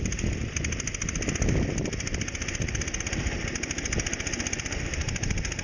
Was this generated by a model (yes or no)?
no